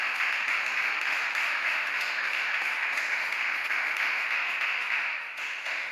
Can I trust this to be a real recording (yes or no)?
no